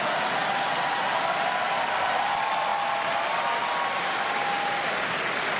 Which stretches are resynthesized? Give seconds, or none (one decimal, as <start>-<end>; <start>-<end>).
none